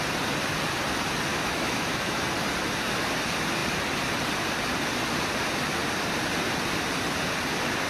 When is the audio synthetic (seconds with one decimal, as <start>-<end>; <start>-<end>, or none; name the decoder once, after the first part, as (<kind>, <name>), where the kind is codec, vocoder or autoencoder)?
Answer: 1.3-2.2 (autoencoder, DAC-VAE)